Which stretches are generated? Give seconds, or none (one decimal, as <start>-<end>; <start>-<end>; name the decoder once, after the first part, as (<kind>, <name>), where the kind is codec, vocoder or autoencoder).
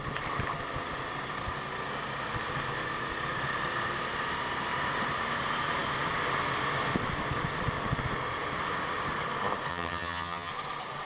9.7-10.5 (vocoder, HiFi-GAN)